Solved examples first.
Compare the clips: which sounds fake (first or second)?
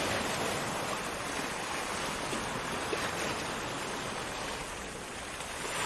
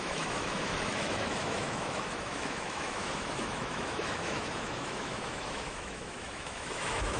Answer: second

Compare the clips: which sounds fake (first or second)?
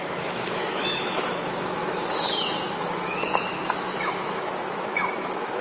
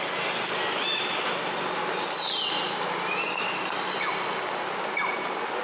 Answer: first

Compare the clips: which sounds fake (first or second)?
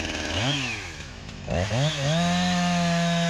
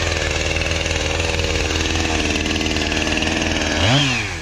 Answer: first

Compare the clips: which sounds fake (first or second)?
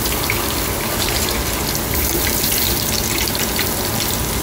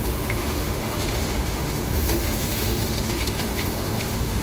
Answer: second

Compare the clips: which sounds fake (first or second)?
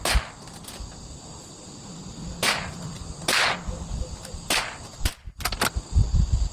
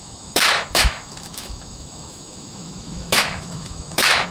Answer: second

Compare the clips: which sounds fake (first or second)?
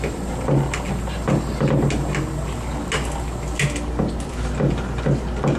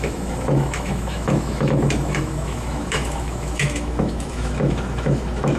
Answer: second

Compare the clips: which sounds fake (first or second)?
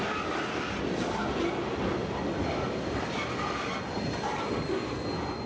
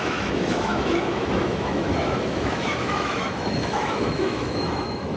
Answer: second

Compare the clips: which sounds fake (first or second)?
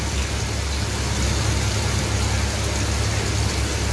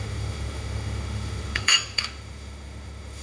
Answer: second